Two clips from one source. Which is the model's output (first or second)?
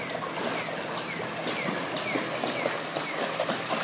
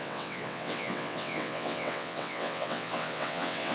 second